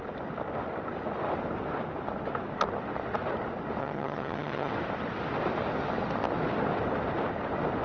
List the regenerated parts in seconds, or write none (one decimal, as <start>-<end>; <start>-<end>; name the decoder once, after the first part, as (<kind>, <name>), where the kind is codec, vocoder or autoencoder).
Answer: 3.8-4.7 (vocoder, HiFi-GAN)